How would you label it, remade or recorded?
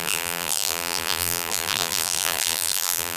remade